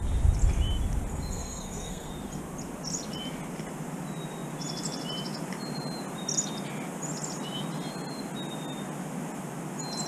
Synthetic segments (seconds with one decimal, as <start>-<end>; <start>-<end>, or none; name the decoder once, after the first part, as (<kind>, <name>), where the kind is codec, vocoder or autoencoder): 1.1-2.1 (codec, SNAC)

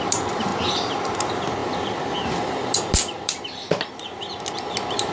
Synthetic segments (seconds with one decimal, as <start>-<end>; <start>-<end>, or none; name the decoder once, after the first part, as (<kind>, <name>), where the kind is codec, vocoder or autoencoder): none

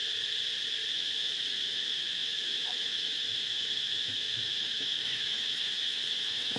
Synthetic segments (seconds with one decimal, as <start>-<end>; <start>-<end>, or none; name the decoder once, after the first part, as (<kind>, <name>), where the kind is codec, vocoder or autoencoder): 0.9-6.6 (autoencoder, DAC-VAE)

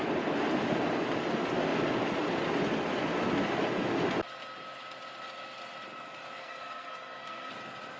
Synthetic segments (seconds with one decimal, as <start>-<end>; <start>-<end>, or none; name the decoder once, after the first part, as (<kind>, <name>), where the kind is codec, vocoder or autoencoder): 6.4-7.5 (codec, SNAC)

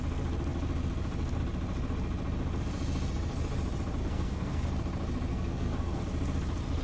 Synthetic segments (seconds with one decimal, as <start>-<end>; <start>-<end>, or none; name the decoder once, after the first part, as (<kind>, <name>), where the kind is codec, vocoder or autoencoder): 4.0-4.6 (codec, SNAC); 5.3-6.0

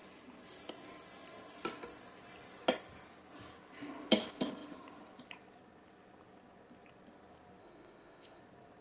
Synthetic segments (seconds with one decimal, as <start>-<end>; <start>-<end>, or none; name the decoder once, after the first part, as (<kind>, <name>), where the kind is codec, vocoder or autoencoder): 7.6-8.4 (autoencoder, DAC-VAE)

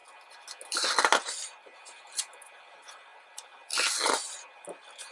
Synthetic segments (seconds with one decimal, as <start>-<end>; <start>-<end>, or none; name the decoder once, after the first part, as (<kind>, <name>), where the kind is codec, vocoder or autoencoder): 3.1-4.0 (vocoder, BigVGAN v2)